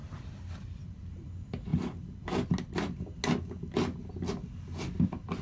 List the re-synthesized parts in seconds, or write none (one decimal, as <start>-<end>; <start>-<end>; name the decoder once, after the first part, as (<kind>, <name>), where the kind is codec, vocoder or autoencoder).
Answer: 0.0-1.1 (vocoder, BigVGAN v2)